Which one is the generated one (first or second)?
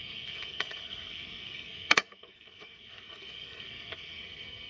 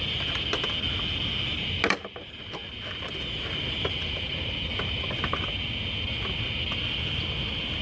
first